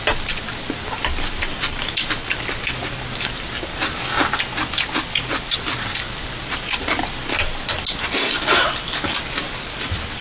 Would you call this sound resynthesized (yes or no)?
no